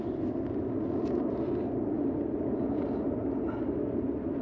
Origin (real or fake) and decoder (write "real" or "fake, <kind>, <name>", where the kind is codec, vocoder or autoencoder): real